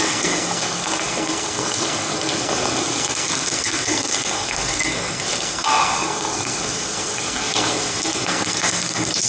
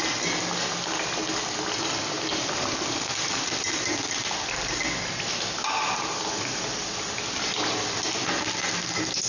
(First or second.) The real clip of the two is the second